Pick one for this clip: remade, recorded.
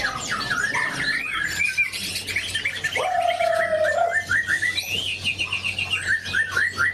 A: recorded